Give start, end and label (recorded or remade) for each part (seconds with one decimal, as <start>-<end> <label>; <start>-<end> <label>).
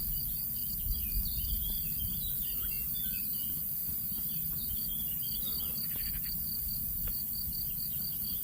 0.0-3.8 recorded; 3.8-4.7 remade; 4.7-8.4 recorded